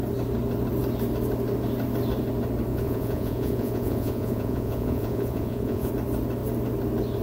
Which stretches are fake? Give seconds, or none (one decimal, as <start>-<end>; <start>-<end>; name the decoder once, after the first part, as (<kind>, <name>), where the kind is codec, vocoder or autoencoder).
2.7-5.9 (vocoder, Vocos)